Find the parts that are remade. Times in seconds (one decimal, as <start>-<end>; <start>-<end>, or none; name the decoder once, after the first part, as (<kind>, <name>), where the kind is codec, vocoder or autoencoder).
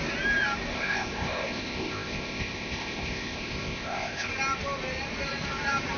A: 0.7-4.3 (codec, ZipCodec)